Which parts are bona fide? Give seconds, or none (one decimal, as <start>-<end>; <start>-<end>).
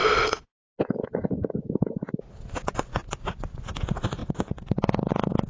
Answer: 0.0-1.6; 2.9-3.8; 4.2-5.1